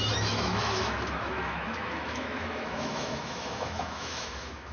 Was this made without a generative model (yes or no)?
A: no